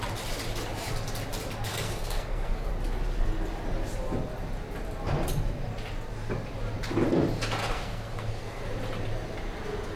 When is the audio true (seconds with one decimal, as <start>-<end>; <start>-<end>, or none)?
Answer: 0.0-1.7; 2.7-7.6; 8.6-10.0